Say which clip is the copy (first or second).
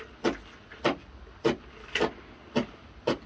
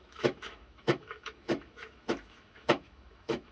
second